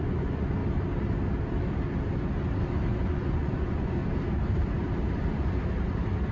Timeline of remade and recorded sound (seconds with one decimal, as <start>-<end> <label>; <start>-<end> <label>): 0.0-0.6 remade; 0.6-2.9 recorded; 2.9-4.0 remade; 4.0-6.3 recorded